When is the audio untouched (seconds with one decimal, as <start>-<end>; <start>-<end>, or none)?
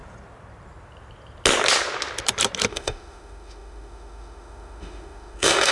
0.0-2.7